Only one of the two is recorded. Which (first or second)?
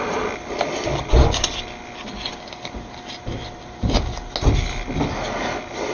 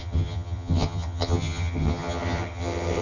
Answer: first